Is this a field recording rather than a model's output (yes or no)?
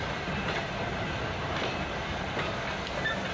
yes